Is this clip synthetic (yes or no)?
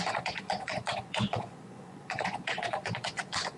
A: yes